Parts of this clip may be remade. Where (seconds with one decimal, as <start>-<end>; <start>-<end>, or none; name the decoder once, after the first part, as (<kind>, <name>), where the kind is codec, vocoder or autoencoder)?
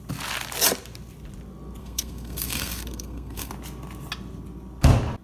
1.8-3.5 (codec, SNAC)